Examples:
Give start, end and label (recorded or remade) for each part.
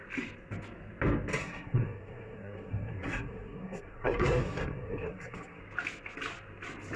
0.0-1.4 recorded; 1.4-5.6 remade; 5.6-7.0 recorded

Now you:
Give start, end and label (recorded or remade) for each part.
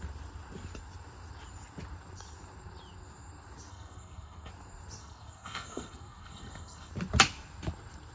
0.0-3.7 recorded; 3.7-4.5 remade; 4.5-5.0 recorded; 5.0-6.9 remade; 6.9-8.1 recorded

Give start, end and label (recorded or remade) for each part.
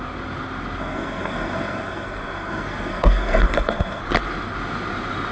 0.0-0.8 recorded; 0.8-4.0 remade; 4.0-5.3 recorded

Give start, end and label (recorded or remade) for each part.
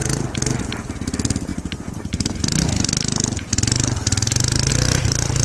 0.0-5.4 recorded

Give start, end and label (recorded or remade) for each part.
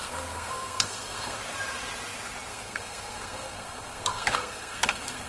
0.0-1.4 remade; 1.4-2.5 recorded; 2.5-5.3 remade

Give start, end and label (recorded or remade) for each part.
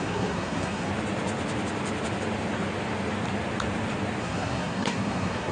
0.0-0.9 remade; 0.9-4.2 recorded; 4.2-5.5 remade